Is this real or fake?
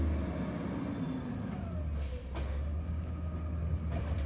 real